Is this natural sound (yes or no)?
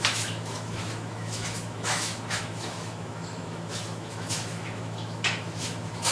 no